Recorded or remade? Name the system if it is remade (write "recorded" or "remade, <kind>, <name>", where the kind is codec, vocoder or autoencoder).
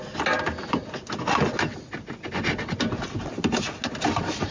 recorded